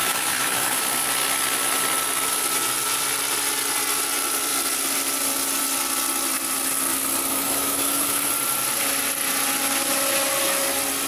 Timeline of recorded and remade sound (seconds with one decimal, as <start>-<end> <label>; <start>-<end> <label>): 0.0-0.8 remade; 0.8-7.3 recorded; 7.3-8.3 remade; 8.3-11.1 recorded